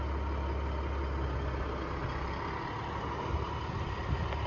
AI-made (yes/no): no